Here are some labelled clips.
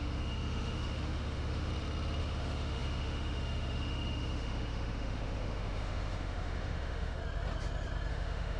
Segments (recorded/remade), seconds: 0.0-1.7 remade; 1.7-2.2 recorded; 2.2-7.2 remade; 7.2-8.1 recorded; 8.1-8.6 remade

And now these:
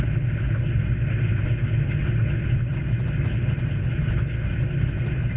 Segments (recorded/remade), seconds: 0.0-5.4 recorded